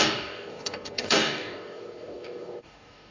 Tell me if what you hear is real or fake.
fake